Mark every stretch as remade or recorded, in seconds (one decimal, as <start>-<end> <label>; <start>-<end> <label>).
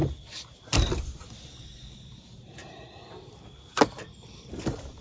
0.0-5.0 recorded